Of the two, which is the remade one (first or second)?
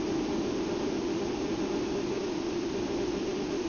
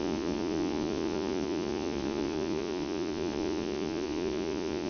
second